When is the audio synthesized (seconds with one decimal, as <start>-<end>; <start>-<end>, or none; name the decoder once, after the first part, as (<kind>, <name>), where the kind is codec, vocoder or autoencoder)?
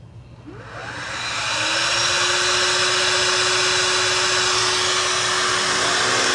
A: none